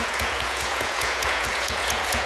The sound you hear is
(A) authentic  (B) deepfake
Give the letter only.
B